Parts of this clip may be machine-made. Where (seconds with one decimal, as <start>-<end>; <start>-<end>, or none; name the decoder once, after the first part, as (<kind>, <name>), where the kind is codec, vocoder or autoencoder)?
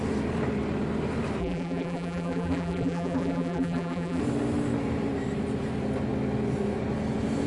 1.4-4.2 (vocoder, BigVGAN v2)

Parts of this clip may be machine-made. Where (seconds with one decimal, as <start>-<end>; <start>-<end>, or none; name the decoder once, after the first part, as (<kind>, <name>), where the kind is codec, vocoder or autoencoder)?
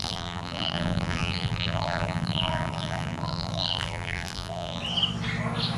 0.0-4.8 (vocoder, BigVGAN v2)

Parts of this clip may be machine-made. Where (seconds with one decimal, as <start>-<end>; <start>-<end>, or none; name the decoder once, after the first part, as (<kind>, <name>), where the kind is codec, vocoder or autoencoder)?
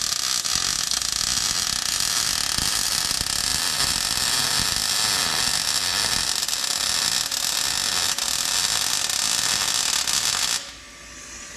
3.5-5.4 (vocoder, BigVGAN v2)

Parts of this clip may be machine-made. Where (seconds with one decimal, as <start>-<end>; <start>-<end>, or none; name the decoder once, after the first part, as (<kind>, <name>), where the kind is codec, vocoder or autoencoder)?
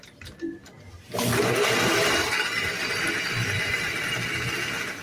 2.2-2.9 (vocoder, BigVGAN v2)